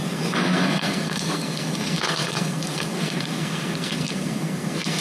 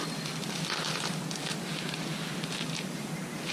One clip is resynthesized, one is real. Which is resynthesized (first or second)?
first